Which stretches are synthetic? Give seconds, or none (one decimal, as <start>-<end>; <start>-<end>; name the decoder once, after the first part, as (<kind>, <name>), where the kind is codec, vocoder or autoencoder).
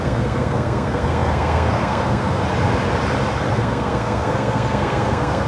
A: 0.0-2.4 (codec, SNAC); 3.5-5.5